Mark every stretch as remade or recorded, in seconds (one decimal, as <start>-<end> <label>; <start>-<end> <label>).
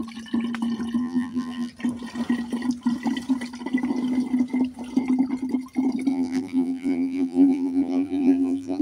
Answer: 0.0-1.0 recorded; 1.0-1.7 remade; 1.7-6.1 recorded; 6.1-8.8 remade